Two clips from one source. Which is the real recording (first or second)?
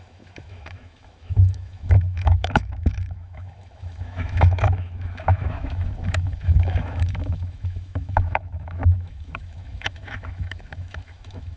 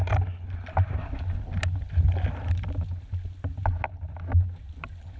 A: second